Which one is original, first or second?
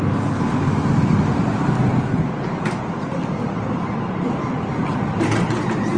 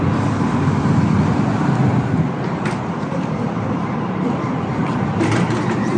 first